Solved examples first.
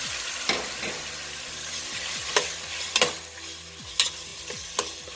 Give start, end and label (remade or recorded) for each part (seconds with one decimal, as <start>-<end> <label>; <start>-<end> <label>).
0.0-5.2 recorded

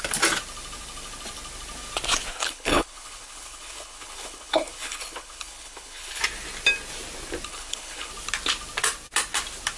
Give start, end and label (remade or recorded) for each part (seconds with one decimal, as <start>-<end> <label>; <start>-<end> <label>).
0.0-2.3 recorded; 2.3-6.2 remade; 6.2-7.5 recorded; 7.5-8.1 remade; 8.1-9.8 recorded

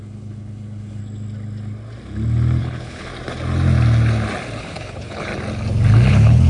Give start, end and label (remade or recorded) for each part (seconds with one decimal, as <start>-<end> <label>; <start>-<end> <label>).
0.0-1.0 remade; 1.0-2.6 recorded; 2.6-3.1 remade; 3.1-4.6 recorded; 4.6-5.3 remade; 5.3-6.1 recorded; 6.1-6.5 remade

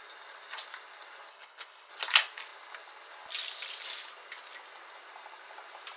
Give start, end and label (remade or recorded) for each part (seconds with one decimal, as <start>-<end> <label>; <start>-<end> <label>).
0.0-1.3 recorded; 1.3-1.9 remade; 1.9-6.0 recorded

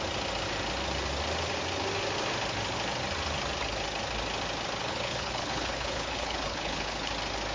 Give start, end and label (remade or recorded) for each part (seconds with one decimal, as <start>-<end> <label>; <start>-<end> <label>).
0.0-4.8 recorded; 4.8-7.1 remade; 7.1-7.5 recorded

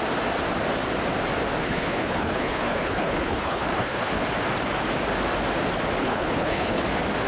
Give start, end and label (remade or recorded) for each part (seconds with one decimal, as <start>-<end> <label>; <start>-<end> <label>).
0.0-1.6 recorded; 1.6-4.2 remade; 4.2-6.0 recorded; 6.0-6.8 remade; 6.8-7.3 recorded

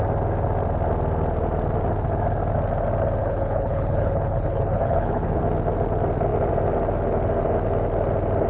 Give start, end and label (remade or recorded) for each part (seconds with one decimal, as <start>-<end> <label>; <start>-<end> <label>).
0.0-3.2 recorded; 3.2-5.4 remade; 5.4-8.5 recorded